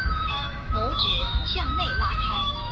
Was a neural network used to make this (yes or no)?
yes